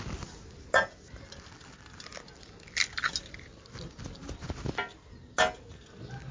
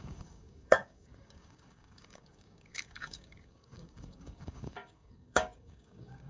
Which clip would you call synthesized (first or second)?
second